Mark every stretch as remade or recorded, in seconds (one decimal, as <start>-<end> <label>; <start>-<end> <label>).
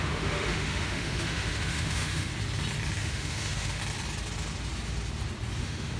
0.0-2.3 remade; 2.3-3.0 recorded; 3.0-3.8 remade; 3.8-5.6 recorded; 5.6-6.0 remade